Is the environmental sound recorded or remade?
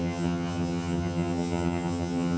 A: remade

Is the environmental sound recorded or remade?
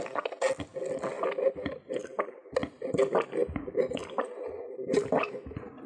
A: recorded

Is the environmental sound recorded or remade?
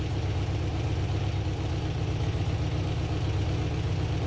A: recorded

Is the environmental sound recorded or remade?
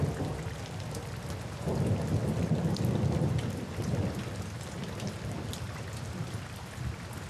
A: recorded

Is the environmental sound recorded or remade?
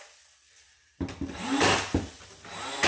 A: recorded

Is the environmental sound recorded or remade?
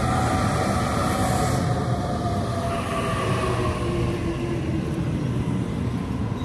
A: recorded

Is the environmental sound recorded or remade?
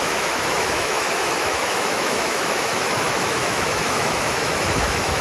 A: remade